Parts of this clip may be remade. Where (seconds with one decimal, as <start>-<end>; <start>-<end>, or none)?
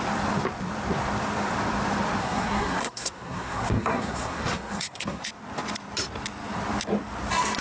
2.2-5.2